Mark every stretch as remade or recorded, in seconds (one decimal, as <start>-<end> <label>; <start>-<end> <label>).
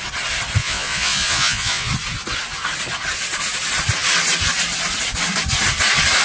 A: 0.0-0.6 recorded; 0.6-1.9 remade; 1.9-6.2 recorded